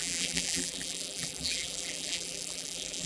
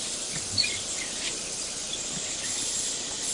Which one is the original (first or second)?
second